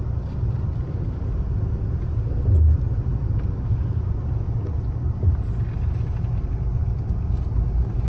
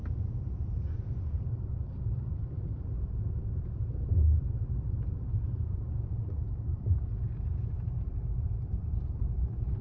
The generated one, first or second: second